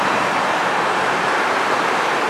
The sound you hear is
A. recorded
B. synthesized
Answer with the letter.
A